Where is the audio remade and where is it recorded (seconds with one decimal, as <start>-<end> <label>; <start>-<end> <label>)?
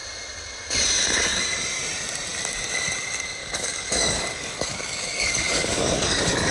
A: 0.0-3.4 recorded; 3.4-6.5 remade